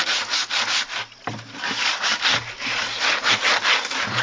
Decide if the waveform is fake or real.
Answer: real